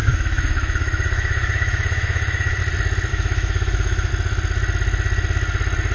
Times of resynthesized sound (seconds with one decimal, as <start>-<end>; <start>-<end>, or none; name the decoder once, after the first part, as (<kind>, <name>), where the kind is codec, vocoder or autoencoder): 0.0-2.6 (autoencoder, DAC-VAE); 3.1-4.1